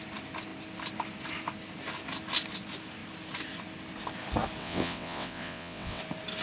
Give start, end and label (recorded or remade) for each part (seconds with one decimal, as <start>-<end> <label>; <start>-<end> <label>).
0.0-4.6 recorded; 4.6-6.0 remade; 6.0-6.4 recorded